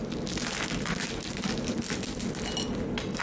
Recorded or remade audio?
recorded